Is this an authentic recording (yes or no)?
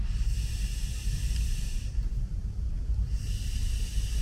yes